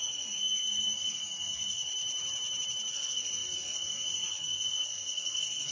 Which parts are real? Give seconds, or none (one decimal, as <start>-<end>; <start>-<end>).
1.9-2.9